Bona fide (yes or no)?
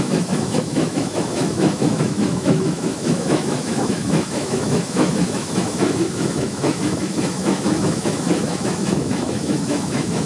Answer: no